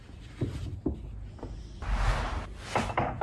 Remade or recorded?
recorded